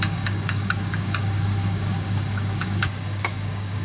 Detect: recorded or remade remade